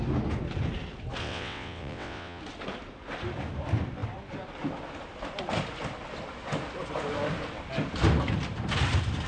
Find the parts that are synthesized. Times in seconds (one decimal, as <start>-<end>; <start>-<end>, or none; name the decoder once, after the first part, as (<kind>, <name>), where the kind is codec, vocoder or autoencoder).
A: 1.2-2.4 (vocoder, WaveNeXt)